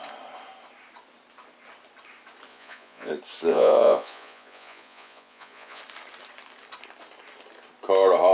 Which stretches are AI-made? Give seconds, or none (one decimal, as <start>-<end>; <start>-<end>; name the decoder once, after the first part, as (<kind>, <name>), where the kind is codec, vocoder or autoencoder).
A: 2.5-3.1 (vocoder, Vocos); 3.5-5.8